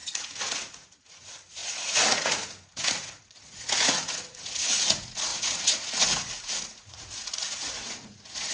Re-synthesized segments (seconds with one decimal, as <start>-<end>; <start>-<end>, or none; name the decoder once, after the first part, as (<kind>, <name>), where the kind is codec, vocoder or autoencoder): 0.0-8.5 (vocoder, Vocos)